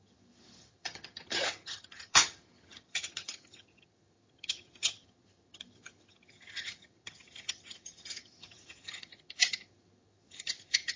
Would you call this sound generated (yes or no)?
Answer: yes